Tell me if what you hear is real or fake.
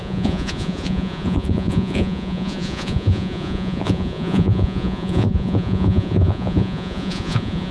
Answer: fake